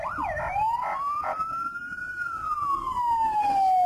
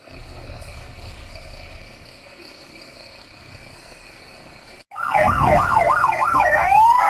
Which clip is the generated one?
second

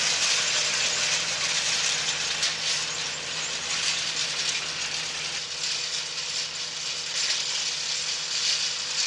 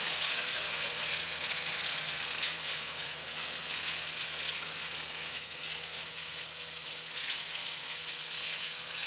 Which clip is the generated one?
second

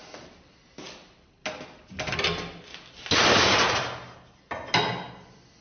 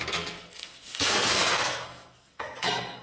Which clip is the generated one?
second